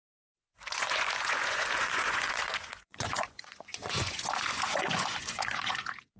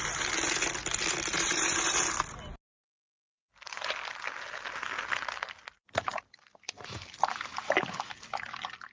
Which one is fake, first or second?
first